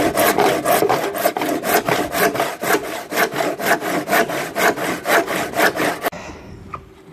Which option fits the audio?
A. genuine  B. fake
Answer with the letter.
A